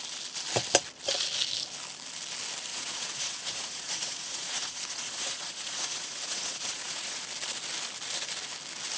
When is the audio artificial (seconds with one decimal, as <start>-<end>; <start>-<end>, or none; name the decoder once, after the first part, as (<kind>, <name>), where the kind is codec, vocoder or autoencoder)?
2.7-7.2 (vocoder, Vocos)

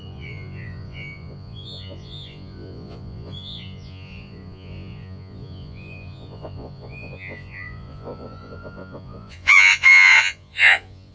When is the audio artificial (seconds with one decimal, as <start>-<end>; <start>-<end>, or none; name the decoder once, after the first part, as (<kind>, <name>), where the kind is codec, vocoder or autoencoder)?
0.0-11.1 (vocoder, Vocos)

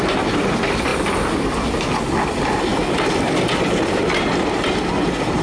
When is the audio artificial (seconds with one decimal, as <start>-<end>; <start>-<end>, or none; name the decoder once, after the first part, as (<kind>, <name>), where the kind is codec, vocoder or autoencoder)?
none

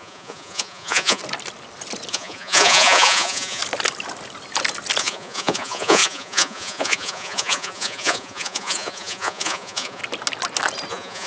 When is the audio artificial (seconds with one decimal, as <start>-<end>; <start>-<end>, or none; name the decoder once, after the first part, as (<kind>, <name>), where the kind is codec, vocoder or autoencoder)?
0.0-1.2 (vocoder, Vocos); 2.1-3.6; 5.0-10.0; 10.9-11.3

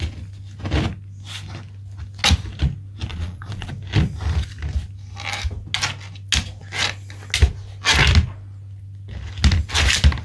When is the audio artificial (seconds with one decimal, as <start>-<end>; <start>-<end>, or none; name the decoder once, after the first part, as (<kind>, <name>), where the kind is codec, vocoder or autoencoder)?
3.1-3.7 (vocoder, Vocos)

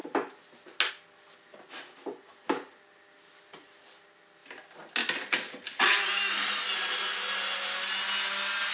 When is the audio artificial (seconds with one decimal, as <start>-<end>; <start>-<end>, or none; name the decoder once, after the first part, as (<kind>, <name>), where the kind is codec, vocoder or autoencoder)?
none